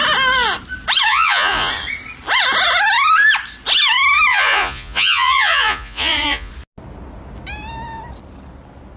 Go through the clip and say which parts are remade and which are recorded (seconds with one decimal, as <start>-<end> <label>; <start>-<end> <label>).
0.0-1.1 recorded; 1.1-1.7 remade; 1.7-4.3 recorded; 4.3-6.5 remade; 6.5-9.0 recorded